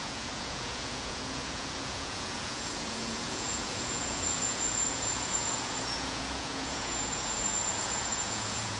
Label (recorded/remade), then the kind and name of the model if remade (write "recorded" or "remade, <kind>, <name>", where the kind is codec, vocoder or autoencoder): remade, vocoder, Vocos